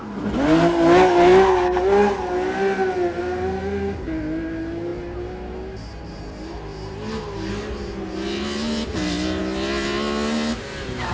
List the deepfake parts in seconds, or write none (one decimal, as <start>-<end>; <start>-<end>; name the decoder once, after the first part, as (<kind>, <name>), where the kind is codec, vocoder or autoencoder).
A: none